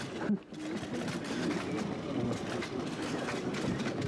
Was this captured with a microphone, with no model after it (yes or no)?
yes